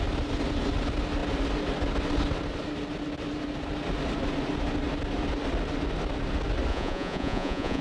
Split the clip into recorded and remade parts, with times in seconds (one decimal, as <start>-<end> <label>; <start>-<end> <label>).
0.0-6.7 recorded; 6.7-7.8 remade